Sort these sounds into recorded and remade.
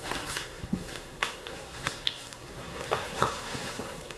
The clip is remade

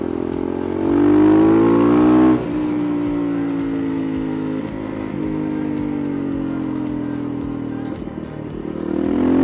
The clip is recorded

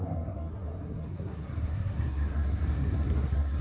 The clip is remade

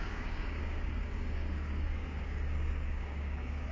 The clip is remade